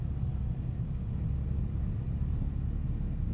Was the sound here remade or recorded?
recorded